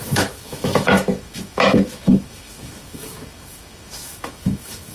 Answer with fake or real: fake